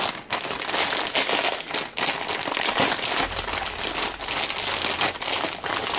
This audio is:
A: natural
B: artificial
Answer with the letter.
A